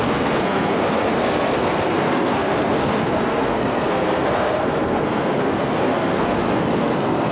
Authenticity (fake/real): fake